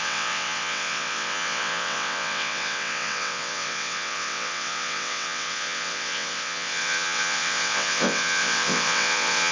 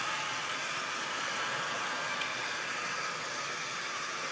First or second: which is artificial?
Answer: first